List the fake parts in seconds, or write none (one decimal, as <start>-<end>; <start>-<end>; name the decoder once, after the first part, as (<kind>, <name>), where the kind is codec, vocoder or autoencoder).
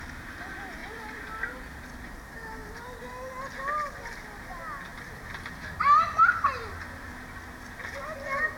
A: 0.8-1.6 (vocoder, BigVGAN v2); 2.6-3.3; 4.9-6.7